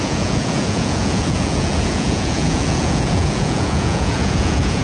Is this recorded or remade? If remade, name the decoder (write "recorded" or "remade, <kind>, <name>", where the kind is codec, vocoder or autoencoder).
remade, vocoder, Vocos